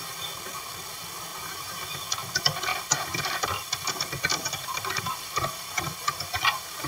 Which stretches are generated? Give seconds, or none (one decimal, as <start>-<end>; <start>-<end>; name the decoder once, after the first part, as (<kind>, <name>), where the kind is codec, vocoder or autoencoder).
1.3-1.8 (vocoder, BigVGAN v2); 2.7-3.7; 4.3-6.9